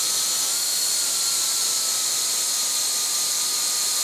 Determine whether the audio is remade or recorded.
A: recorded